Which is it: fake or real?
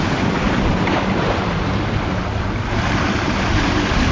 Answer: real